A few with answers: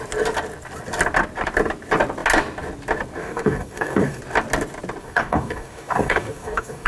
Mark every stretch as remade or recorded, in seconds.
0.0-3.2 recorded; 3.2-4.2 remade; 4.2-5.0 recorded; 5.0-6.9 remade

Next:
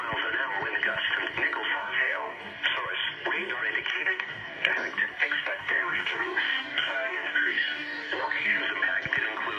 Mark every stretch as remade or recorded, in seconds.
0.0-1.7 recorded; 1.7-2.4 remade; 2.4-3.9 recorded; 3.9-4.7 remade; 4.7-5.2 recorded; 5.2-8.6 remade; 8.6-9.6 recorded

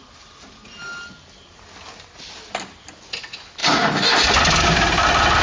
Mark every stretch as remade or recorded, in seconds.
0.0-5.4 recorded

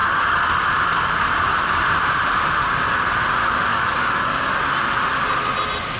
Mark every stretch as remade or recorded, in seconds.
0.0-3.7 recorded; 3.7-4.5 remade; 4.5-6.0 recorded